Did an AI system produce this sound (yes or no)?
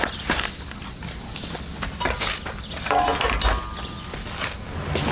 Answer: no